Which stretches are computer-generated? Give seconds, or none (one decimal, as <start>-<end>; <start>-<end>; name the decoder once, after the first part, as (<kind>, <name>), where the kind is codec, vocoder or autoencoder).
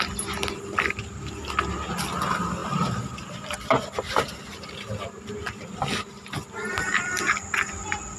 none